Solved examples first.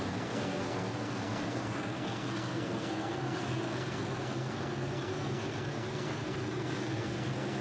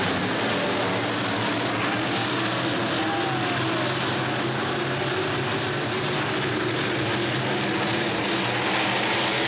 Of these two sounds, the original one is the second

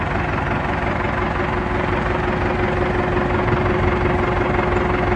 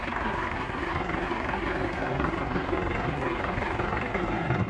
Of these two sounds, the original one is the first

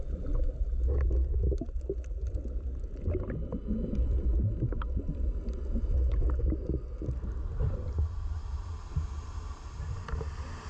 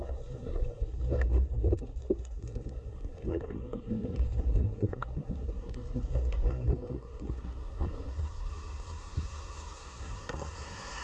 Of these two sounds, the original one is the first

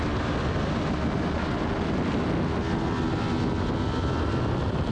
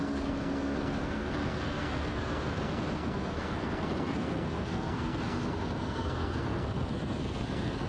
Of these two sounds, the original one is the first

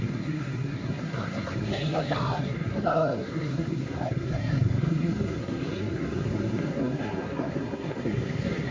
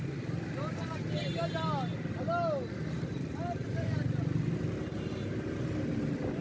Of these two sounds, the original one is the second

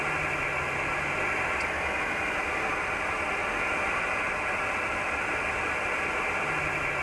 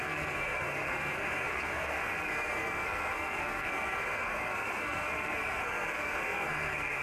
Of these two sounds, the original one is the first